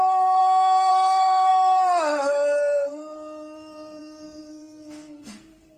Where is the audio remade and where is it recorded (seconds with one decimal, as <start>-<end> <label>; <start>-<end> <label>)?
0.0-0.4 remade; 0.4-0.9 recorded; 0.9-5.8 remade